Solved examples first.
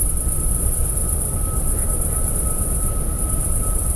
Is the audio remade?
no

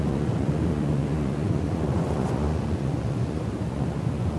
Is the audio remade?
yes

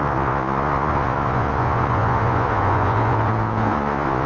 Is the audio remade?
yes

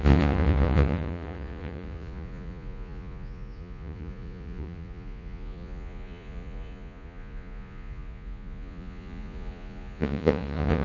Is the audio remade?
yes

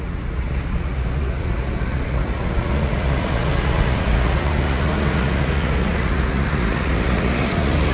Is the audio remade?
yes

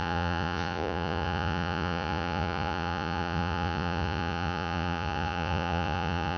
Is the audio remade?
yes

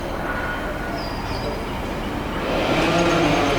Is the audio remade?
no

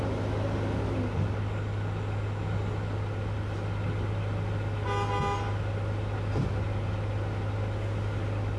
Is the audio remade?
no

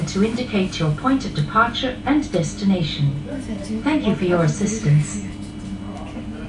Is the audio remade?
no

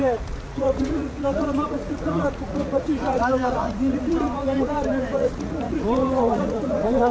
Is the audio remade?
yes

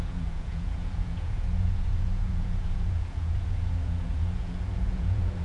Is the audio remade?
yes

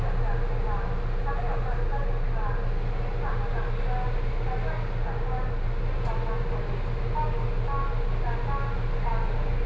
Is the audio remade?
no